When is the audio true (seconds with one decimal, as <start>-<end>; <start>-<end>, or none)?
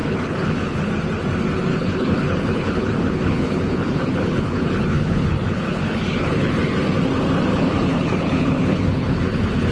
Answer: 0.9-1.7; 6.5-7.5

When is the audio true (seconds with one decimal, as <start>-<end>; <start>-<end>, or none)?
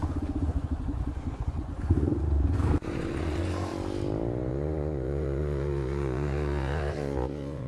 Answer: 3.7-4.5